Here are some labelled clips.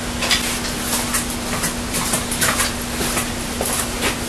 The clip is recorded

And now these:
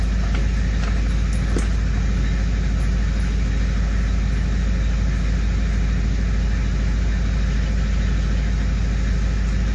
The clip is recorded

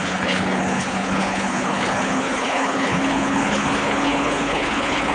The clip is remade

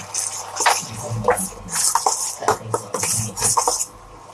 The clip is recorded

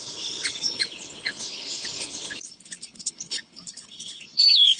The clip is remade